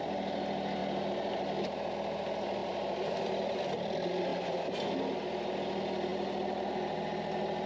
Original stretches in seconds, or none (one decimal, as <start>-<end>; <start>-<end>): 0.0-2.6; 3.9-4.3; 5.0-7.7